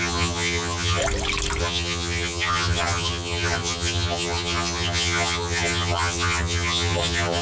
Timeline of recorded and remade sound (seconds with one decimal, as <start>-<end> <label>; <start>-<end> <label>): 0.0-1.0 remade; 1.0-1.6 recorded; 1.6-7.4 remade